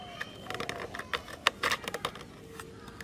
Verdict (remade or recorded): recorded